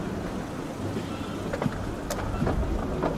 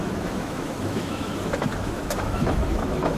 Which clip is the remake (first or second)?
second